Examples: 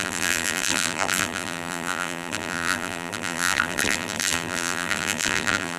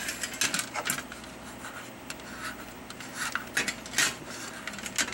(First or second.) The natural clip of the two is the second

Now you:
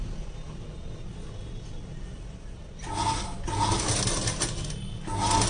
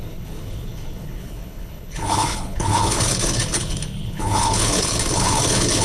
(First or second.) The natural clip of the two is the first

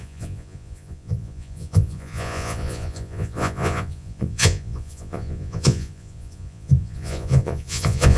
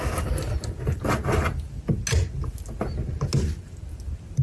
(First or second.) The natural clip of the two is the second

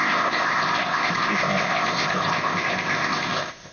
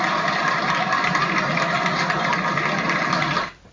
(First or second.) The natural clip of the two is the second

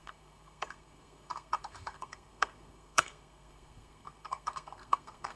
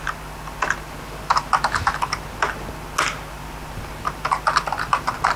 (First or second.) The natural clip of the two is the second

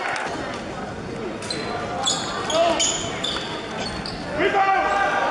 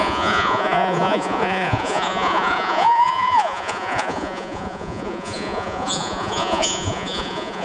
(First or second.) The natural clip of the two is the first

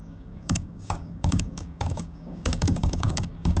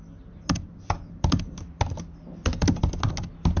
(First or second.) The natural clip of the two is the second